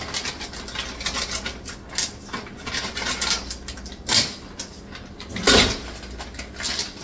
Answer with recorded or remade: recorded